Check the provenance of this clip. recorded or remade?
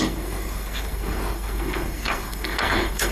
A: remade